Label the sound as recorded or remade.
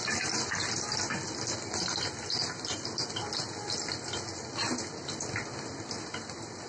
recorded